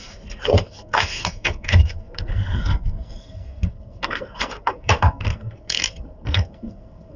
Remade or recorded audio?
remade